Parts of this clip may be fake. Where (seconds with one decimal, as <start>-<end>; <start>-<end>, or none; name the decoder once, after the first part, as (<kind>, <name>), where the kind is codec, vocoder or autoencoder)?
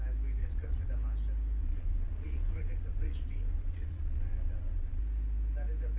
0.4-0.9 (vocoder, Vocos); 1.6-5.0